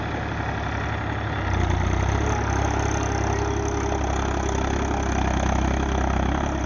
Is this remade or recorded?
recorded